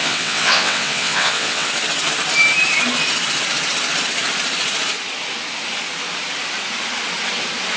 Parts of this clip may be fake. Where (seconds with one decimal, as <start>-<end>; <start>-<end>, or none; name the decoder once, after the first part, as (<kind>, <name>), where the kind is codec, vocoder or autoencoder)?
0.0-1.7 (vocoder, WaveNeXt)